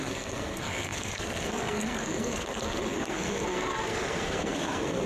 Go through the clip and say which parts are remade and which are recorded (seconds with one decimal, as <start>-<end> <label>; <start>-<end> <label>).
0.0-5.1 remade